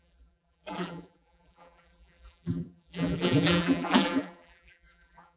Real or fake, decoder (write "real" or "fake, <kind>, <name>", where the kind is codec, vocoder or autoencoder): fake, vocoder, BigVGAN v2